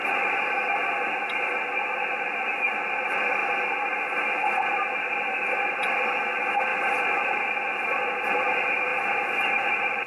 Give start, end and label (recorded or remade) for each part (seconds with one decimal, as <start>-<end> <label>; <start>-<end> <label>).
0.0-0.7 remade; 0.7-6.7 recorded; 6.7-7.5 remade; 7.5-10.1 recorded